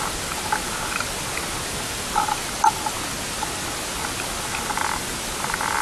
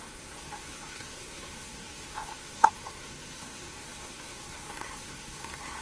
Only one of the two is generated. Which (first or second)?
second